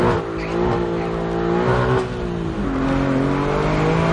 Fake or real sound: real